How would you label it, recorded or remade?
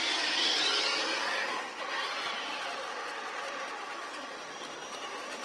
recorded